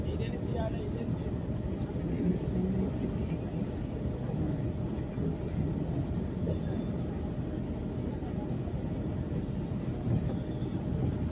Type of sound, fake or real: real